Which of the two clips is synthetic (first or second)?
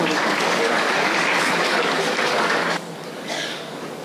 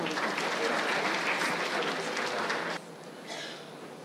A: first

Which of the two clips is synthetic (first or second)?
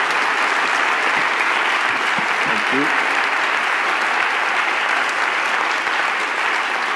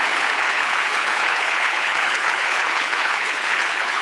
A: second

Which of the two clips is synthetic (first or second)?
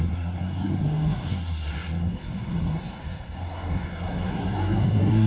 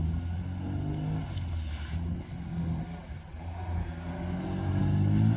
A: first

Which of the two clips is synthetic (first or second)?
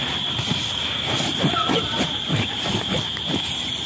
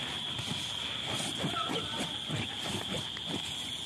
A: first